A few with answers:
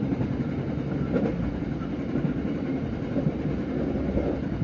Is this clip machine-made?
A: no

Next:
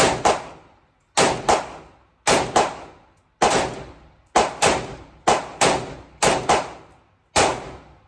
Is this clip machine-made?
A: no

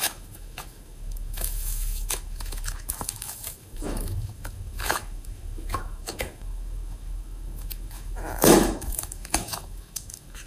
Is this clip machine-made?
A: yes